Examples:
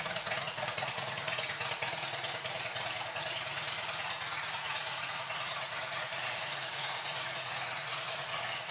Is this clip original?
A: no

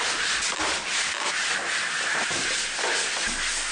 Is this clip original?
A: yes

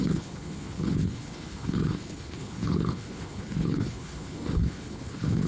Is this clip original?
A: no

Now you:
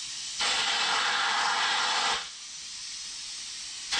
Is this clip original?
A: yes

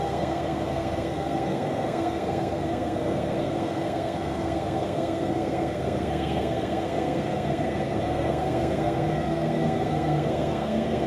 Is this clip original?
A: no